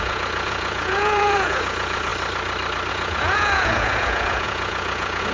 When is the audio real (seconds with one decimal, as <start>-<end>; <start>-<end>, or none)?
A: 2.1-2.9